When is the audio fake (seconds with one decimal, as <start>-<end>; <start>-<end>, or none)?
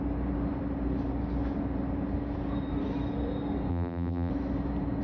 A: 3.7-4.3